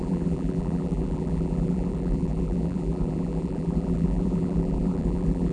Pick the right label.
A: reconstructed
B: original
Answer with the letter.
A